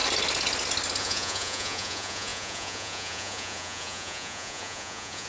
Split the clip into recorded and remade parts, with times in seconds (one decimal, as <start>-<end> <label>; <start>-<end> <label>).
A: 0.0-1.0 recorded; 1.0-5.3 remade